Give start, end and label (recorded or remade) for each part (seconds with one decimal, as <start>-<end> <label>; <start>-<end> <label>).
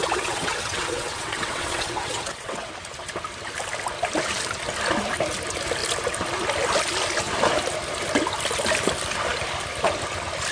0.0-2.7 remade; 2.7-10.5 recorded